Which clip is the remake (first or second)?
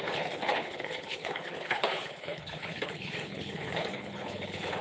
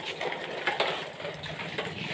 first